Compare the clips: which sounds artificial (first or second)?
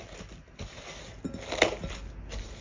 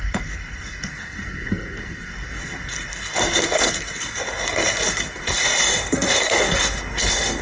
second